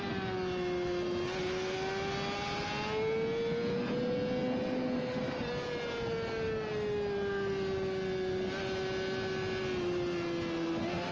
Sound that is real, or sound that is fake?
real